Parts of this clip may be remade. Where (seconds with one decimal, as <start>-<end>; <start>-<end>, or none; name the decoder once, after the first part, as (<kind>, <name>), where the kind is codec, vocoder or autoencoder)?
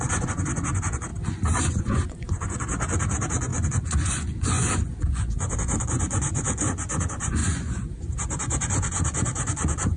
0.0-1.1 (vocoder, Vocos); 1.7-10.0